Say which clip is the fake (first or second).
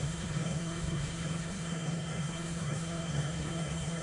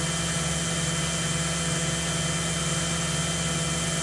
first